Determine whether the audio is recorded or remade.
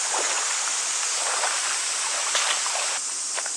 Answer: recorded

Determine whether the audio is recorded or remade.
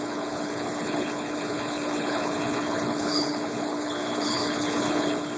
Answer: remade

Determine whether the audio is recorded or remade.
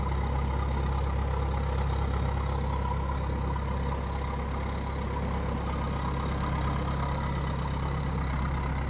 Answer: recorded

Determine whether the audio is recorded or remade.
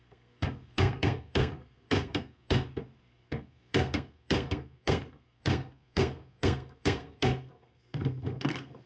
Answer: remade